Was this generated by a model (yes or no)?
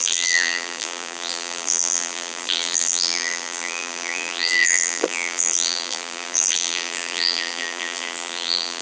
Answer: yes